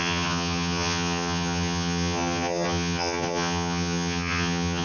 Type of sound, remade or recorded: remade